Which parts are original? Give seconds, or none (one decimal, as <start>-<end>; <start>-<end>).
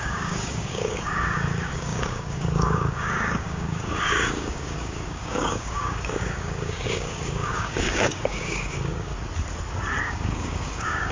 9.1-10.0